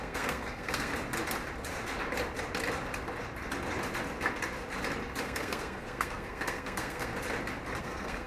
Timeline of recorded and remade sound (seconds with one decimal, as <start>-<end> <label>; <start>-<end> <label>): 0.0-0.9 remade; 0.9-5.2 recorded; 5.2-7.1 remade; 7.1-7.8 recorded; 7.8-8.3 remade